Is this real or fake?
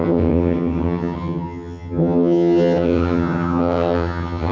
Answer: fake